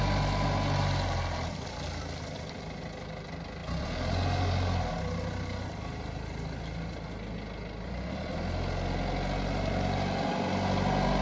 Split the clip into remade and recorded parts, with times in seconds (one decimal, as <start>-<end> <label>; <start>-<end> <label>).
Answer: 0.0-11.2 recorded